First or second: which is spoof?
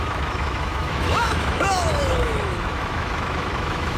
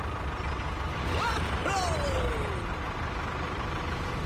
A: first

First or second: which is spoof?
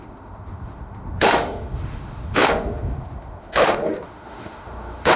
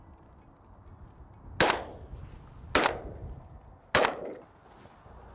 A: first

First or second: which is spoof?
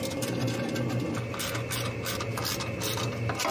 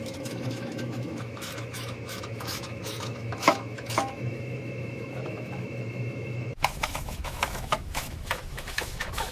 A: second